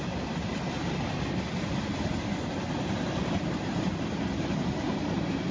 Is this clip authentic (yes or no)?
yes